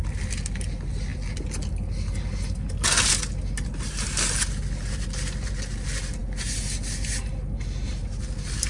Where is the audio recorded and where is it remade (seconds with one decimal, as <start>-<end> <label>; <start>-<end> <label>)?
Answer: 0.0-8.7 recorded

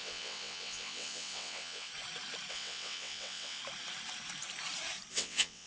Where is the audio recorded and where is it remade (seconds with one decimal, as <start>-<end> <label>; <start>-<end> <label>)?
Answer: 0.0-1.9 remade; 1.9-2.5 recorded; 2.5-3.6 remade; 3.6-5.1 recorded; 5.1-5.7 remade

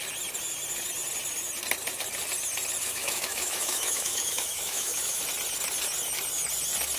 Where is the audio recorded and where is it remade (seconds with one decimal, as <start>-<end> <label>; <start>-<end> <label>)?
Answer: 0.0-2.8 recorded; 2.8-5.2 remade; 5.2-7.0 recorded

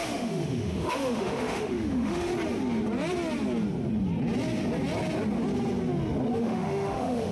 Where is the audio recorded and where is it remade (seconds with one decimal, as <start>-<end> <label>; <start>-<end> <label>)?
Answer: 0.0-2.3 remade; 2.3-6.4 recorded; 6.4-7.3 remade

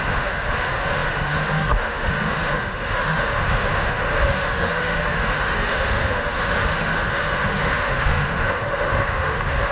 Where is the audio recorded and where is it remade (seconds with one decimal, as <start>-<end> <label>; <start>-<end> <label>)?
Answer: 0.0-9.7 remade

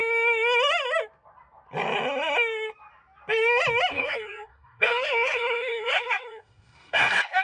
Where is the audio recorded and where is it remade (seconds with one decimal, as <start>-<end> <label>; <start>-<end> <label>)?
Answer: 0.0-3.9 recorded; 3.9-7.4 remade

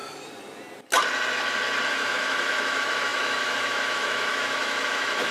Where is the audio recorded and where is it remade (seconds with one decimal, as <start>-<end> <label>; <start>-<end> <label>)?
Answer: 0.0-1.9 recorded; 1.9-5.3 remade